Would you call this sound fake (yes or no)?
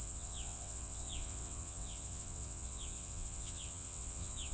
yes